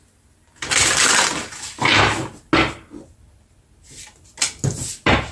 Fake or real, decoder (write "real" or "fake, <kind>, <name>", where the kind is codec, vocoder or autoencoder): real